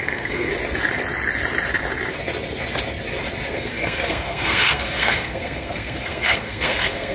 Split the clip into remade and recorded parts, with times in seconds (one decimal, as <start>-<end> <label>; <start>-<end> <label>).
0.0-0.5 remade; 0.5-3.5 recorded; 3.5-7.1 remade